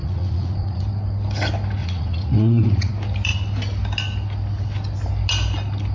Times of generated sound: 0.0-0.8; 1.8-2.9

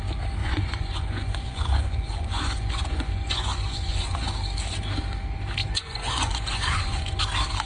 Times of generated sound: 0.4-4.3; 5.6-7.2

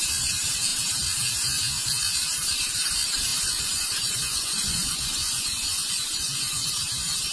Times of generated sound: 3.3-6.7

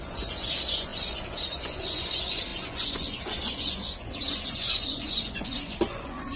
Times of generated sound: 0.0-6.4